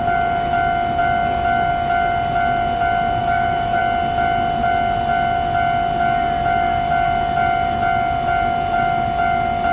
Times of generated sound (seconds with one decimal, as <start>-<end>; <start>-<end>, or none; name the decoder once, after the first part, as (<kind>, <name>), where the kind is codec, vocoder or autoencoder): 3.2-3.8 (autoencoder, DAC-VAE)

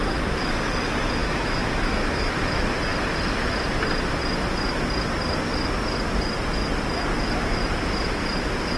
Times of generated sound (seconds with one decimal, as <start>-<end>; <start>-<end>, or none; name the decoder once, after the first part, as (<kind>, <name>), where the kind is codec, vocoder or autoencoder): 1.2-2.3 (autoencoder, DAC-VAE)

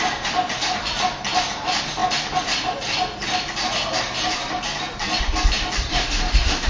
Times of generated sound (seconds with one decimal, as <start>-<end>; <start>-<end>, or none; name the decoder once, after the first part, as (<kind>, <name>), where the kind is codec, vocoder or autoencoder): 5.9-6.7 (autoencoder, DAC-VAE)

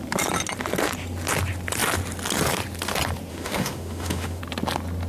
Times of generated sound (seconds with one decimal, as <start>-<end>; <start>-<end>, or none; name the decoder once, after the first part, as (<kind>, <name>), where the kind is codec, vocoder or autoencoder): 3.3-4.4 (autoencoder, DAC-VAE)